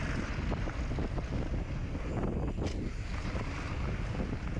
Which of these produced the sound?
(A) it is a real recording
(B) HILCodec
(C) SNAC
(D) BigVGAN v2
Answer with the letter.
A